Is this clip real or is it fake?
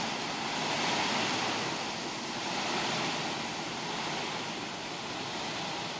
real